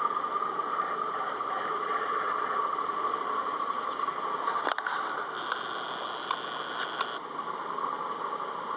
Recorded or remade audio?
recorded